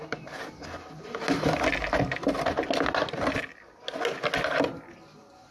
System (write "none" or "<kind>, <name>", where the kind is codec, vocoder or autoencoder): none